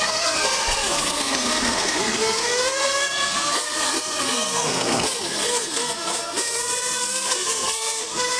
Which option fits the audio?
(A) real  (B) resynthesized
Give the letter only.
B